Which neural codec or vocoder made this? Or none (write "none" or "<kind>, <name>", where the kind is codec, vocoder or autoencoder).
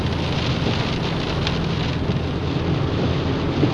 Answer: none